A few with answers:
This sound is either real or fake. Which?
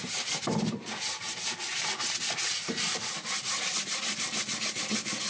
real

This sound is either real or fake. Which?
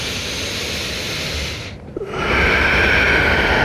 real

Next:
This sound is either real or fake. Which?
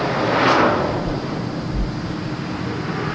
real